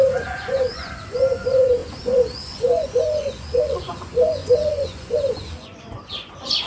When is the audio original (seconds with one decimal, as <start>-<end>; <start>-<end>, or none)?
none